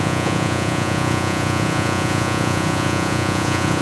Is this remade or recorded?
remade